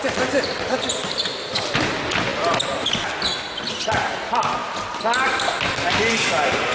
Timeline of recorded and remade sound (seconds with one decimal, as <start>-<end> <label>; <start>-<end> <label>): 0.0-6.7 recorded